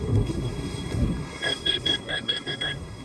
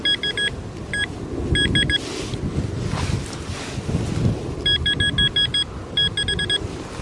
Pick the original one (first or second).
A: second